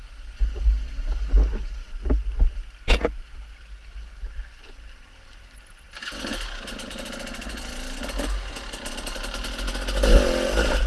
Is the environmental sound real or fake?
real